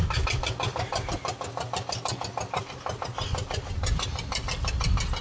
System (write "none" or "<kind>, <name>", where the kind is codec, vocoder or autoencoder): none